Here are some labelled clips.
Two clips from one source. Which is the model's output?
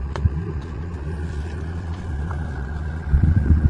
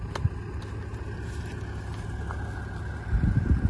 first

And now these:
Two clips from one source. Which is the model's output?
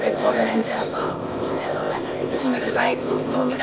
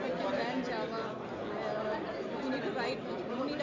first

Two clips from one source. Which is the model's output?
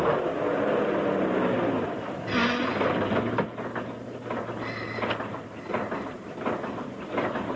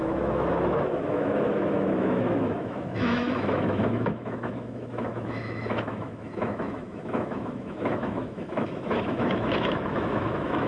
second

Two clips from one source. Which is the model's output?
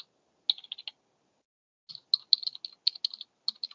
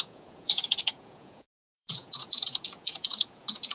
second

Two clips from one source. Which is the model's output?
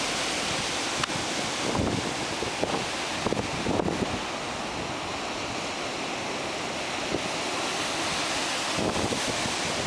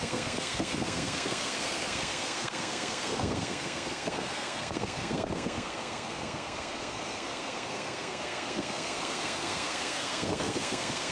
second